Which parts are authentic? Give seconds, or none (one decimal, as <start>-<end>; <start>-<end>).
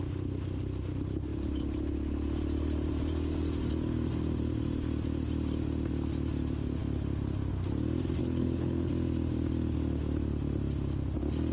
0.0-8.2; 8.9-11.5